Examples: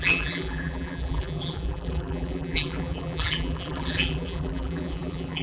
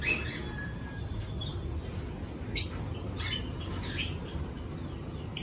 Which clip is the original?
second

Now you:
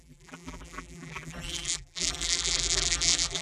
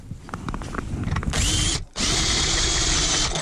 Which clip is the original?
second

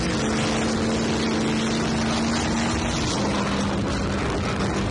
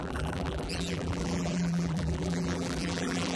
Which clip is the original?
first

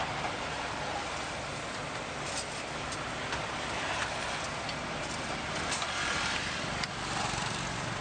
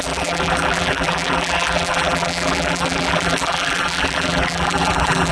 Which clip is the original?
first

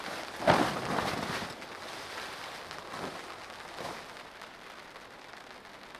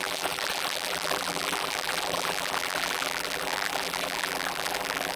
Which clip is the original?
first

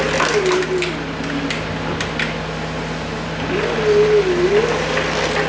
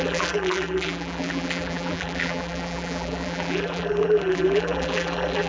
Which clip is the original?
first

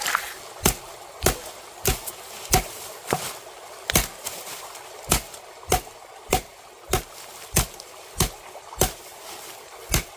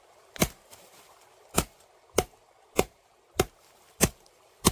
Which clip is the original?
first